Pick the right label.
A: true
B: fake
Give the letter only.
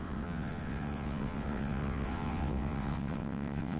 B